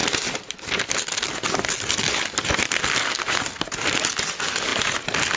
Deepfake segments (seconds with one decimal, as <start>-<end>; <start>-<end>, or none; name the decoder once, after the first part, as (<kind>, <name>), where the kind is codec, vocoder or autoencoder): none